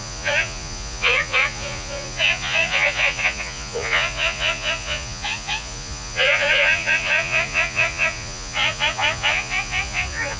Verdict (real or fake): fake